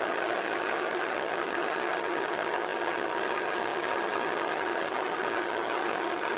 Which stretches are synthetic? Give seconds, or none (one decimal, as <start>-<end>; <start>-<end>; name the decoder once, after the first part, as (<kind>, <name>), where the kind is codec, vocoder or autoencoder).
0.0-6.4 (vocoder, HiFi-GAN)